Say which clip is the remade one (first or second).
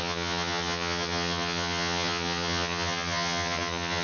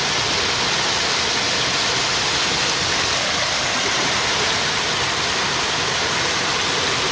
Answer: first